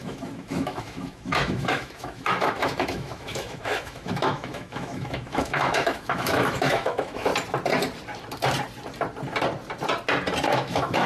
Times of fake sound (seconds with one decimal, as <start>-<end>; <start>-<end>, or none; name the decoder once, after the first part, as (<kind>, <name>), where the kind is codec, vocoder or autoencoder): 0.0-7.3 (autoencoder, DAC-VAE); 10.5-11.1